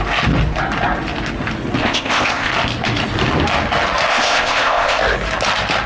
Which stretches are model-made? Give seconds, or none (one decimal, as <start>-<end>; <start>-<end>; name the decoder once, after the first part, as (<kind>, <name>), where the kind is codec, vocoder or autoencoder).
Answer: 1.8-2.5 (codec, ZipCodec); 4.1-5.0